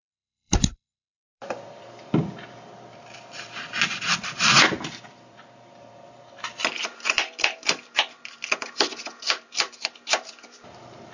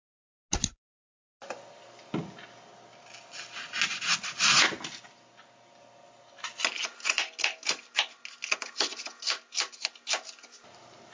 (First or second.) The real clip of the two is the second